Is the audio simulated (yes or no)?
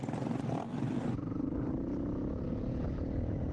no